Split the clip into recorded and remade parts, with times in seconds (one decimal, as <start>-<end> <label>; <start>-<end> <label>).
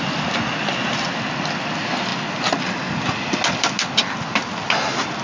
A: 0.0-5.2 recorded